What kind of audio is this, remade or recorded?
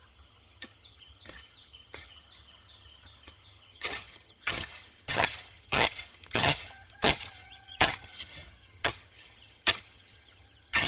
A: remade